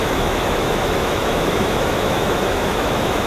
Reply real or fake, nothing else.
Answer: fake